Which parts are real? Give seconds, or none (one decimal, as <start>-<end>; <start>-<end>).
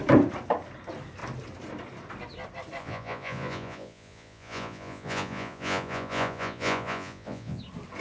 0.0-2.8; 7.6-8.0